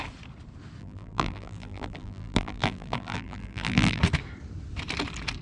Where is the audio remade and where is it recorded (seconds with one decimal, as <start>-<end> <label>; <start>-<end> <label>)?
0.0-0.8 recorded; 0.8-4.0 remade; 4.0-5.4 recorded